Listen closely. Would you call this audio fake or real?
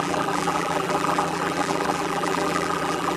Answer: fake